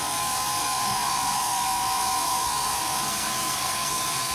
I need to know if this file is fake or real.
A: fake